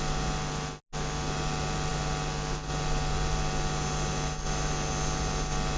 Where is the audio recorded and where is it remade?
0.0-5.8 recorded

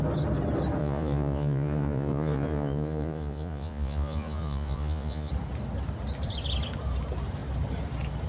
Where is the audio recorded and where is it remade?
0.0-0.8 recorded; 0.8-5.3 remade; 5.3-8.3 recorded

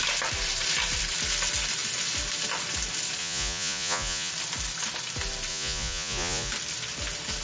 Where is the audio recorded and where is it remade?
0.0-3.2 recorded; 3.2-4.3 remade; 4.3-5.5 recorded; 5.5-6.5 remade; 6.5-7.4 recorded

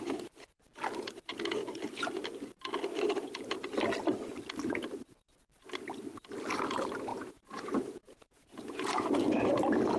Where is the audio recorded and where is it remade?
0.0-7.1 recorded; 7.1-9.2 remade; 9.2-10.0 recorded

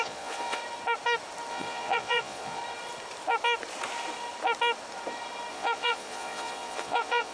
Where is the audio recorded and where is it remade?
0.0-0.6 remade; 0.6-1.5 recorded; 1.5-2.6 remade; 2.6-5.5 recorded; 5.5-7.3 remade

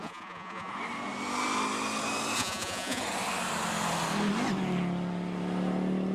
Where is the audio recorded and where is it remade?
0.0-0.7 remade; 0.7-2.4 recorded; 2.4-3.0 remade; 3.0-6.1 recorded